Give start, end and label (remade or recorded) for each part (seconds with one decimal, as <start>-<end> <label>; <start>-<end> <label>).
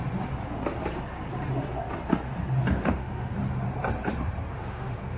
0.0-2.7 recorded; 2.7-3.3 remade; 3.3-4.5 recorded; 4.5-5.2 remade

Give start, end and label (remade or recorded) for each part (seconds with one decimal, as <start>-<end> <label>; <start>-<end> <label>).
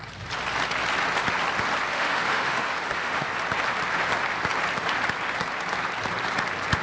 0.0-1.9 recorded; 1.9-3.3 remade; 3.3-6.8 recorded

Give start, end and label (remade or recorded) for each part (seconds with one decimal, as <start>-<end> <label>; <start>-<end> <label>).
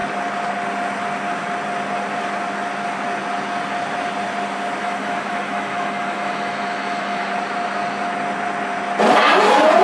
0.0-4.8 recorded; 4.8-7.3 remade; 7.3-9.8 recorded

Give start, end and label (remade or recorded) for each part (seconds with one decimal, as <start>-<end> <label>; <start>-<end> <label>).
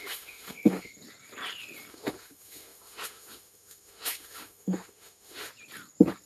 0.0-0.9 remade; 0.9-1.9 recorded; 1.9-5.5 remade; 5.5-6.3 recorded